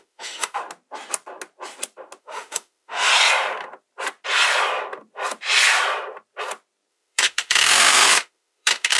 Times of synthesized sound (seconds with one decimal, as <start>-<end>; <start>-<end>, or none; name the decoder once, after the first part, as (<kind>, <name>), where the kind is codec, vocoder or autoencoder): 0.0-0.6 (autoencoder, DAC-VAE); 2.2-3.1; 6.9-9.0